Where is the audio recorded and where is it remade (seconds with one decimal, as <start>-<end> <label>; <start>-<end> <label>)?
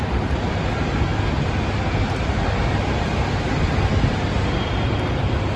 0.0-5.6 recorded